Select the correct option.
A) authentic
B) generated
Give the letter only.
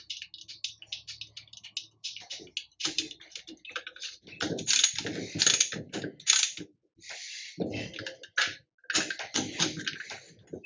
A